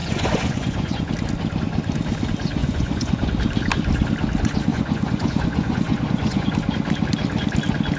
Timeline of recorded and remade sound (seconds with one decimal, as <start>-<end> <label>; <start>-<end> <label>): 0.0-1.1 remade; 1.1-2.6 recorded; 2.6-3.2 remade; 3.2-4.7 recorded; 4.7-6.5 remade; 6.5-8.0 recorded